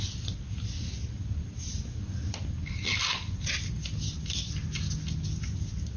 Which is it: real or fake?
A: real